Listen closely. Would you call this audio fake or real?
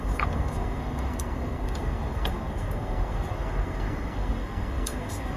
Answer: fake